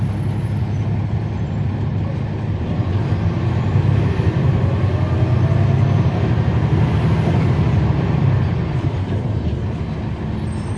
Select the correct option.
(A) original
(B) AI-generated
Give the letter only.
A